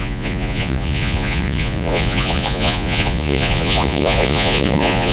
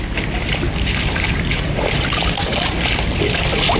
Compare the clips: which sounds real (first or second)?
second